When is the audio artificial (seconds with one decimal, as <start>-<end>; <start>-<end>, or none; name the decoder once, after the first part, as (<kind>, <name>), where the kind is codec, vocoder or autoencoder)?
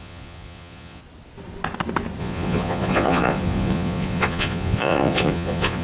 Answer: 0.0-1.0 (vocoder, Vocos); 2.2-5.8